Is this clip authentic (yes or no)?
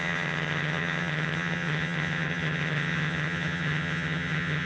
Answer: no